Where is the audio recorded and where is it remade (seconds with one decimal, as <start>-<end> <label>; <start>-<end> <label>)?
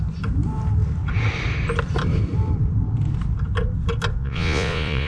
0.0-4.2 recorded; 4.2-5.1 remade